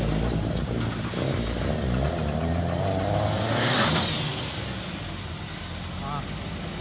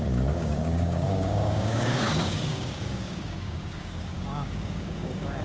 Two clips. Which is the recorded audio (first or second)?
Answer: first